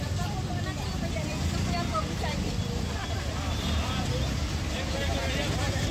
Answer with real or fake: real